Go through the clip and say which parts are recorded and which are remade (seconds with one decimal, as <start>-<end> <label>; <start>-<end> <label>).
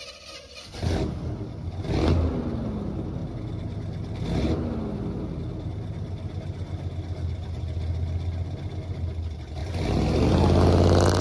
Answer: 0.0-11.2 recorded